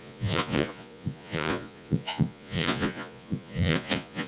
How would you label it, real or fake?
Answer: fake